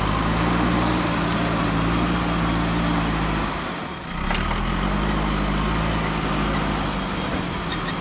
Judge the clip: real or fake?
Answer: real